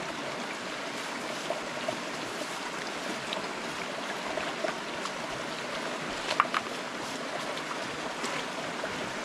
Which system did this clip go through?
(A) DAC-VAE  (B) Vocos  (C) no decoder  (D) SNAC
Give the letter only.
C